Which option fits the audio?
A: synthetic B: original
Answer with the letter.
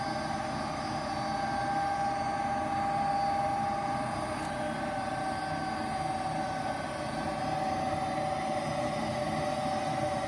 B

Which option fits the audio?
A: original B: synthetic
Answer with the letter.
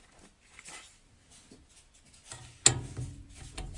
A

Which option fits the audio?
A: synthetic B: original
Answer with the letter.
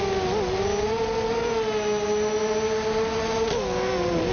B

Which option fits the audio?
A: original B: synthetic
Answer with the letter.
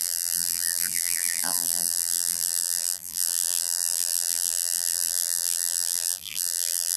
B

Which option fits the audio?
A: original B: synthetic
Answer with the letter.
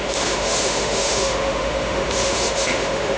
B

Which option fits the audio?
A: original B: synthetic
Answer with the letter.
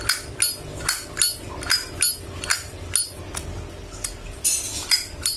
A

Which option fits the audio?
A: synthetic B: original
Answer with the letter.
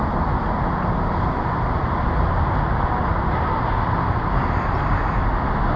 B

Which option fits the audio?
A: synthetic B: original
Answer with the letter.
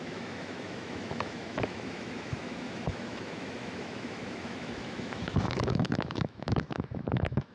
A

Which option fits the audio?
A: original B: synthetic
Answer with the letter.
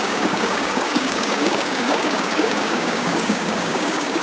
B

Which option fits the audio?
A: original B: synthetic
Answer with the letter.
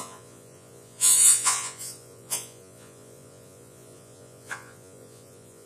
B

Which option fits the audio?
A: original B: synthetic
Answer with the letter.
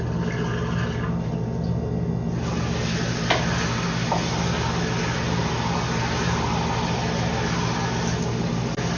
A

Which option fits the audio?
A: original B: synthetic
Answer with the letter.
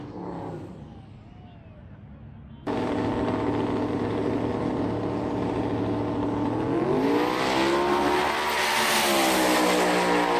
A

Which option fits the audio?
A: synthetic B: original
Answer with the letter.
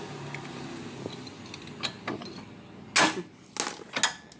B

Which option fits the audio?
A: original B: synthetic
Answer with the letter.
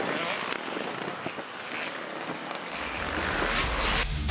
A